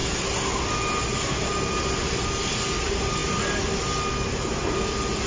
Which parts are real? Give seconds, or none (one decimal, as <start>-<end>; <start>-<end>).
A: 0.0-5.3